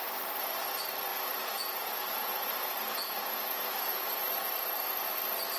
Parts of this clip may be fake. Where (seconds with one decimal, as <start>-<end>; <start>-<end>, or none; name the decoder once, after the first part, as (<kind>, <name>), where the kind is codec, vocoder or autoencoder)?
1.1-4.5 (vocoder, Vocos)